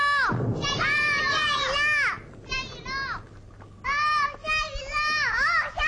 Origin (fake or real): real